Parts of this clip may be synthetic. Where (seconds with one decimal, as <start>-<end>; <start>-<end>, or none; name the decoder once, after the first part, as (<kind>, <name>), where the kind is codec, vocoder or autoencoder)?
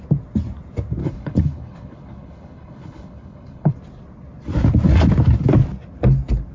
1.0-3.7 (codec, HILCodec)